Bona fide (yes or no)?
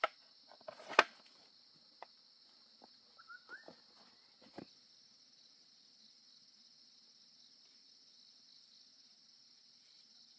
yes